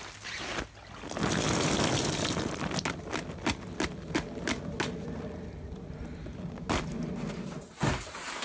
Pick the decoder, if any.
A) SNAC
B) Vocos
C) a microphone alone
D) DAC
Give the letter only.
C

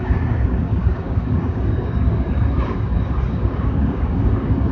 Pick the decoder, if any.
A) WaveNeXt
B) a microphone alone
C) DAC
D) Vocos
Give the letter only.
C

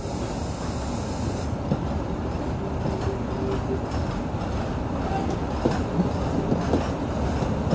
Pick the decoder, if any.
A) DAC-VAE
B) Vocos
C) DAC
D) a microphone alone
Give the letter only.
D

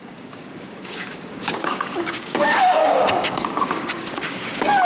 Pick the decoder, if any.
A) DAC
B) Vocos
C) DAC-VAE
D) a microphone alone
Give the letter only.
A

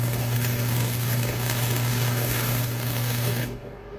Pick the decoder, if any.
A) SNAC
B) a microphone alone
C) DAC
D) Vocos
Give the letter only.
C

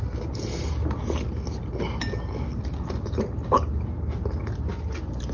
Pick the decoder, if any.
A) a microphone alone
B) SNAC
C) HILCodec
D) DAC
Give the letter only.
A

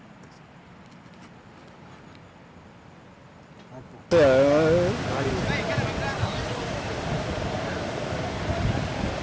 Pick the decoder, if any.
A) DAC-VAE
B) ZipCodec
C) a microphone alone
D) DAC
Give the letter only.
C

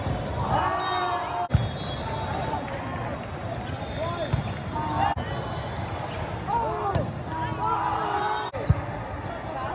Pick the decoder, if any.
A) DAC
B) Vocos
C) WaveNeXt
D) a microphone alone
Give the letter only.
D